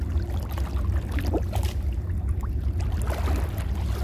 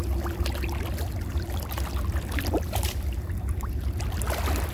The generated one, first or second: second